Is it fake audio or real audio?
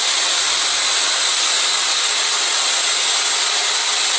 real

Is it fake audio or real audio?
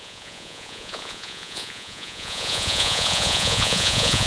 fake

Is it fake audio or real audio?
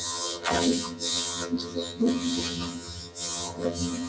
fake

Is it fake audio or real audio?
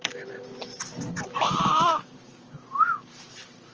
fake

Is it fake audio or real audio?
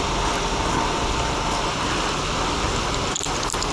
real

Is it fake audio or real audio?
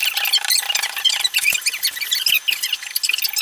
real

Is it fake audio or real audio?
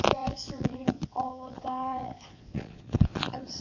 fake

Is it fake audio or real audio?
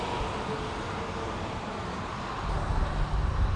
real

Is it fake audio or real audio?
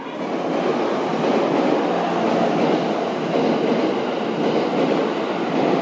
real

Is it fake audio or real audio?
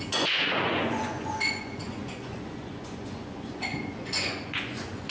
fake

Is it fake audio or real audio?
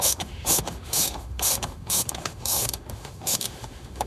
fake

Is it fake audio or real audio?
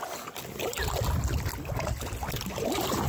real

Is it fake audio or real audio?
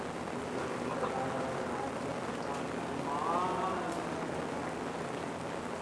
real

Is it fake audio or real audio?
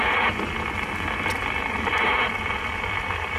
real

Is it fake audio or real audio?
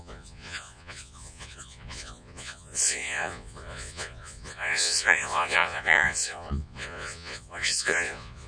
fake